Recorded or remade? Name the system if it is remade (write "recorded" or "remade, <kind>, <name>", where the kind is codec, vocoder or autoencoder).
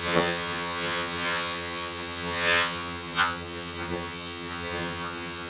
remade, vocoder, HiFi-GAN